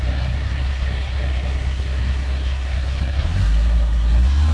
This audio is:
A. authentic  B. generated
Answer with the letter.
B